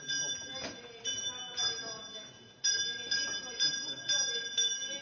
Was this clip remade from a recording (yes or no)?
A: no